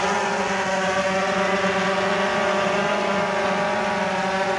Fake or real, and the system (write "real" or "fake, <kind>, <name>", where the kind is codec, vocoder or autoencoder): fake, vocoder, Vocos